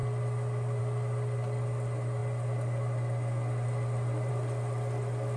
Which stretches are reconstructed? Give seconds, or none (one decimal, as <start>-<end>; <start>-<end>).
none